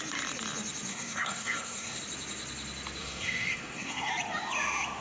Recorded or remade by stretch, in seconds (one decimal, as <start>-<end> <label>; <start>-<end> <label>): 0.0-0.9 recorded; 0.9-2.0 remade; 2.0-3.0 recorded; 3.0-4.1 remade; 4.1-5.0 recorded